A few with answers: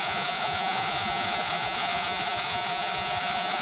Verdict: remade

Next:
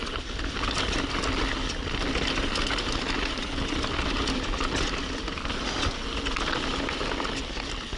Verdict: recorded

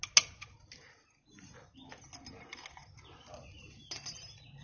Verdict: recorded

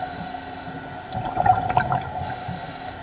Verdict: recorded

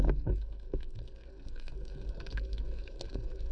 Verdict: remade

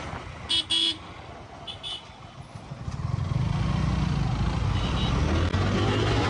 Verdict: recorded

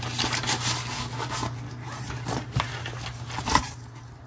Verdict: recorded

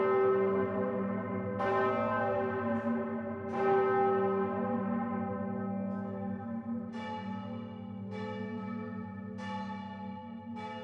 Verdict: recorded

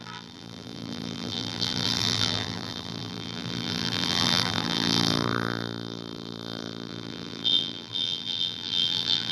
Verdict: remade